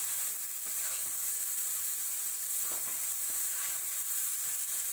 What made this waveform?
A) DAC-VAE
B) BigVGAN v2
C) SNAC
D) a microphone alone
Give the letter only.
D